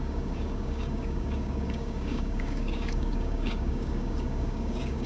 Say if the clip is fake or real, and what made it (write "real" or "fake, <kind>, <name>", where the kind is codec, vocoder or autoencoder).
fake, codec, DAC